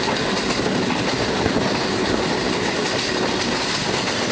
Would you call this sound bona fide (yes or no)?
yes